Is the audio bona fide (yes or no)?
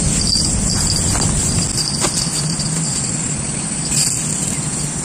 yes